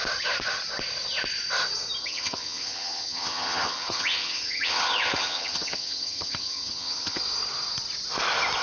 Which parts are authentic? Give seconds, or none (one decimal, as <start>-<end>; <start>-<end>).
0.0-2.0; 7.2-8.6